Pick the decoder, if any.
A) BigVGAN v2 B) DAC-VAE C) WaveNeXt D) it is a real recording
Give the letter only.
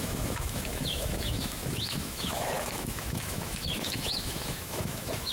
B